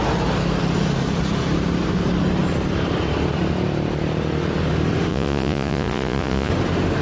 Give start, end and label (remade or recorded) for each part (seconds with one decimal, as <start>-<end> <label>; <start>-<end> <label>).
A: 0.0-5.1 recorded; 5.1-6.5 remade; 6.5-7.0 recorded